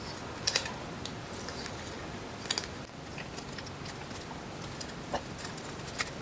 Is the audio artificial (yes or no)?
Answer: no